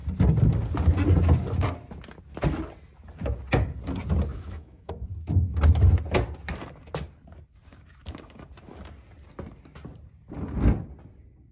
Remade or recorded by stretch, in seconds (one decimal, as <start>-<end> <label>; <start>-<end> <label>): 0.0-4.3 recorded; 4.3-4.9 remade; 4.9-11.5 recorded